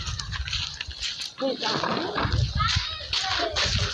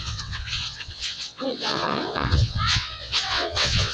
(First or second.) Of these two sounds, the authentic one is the first